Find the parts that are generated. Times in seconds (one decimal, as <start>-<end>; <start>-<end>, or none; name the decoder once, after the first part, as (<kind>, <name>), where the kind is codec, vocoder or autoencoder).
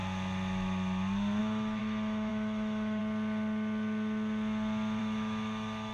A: 1.4-3.0 (autoencoder, DAC-VAE); 5.0-5.9